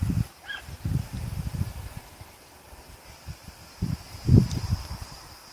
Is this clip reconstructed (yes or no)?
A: yes